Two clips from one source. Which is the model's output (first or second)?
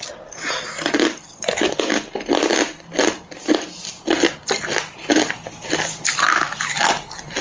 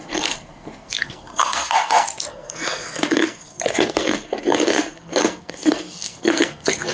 second